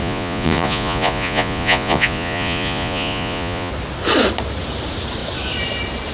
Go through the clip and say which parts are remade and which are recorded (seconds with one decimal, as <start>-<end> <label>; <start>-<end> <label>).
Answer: 0.0-3.7 remade; 3.7-6.1 recorded